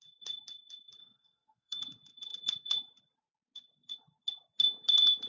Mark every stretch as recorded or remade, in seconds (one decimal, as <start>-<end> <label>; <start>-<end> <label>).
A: 0.0-1.0 recorded; 1.0-1.8 remade; 1.8-5.3 recorded